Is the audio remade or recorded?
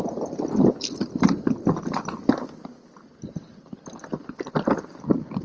recorded